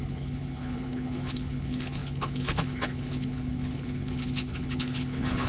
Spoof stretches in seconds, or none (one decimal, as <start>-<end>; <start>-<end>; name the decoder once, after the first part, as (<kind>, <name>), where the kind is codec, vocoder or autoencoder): 0.0-5.5 (codec, HILCodec)